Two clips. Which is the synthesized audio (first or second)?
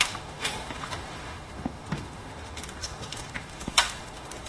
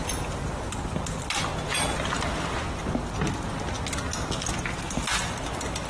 first